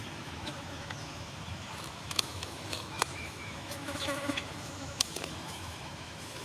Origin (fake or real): fake